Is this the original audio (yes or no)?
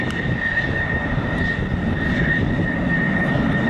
yes